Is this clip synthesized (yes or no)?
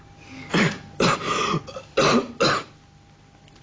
no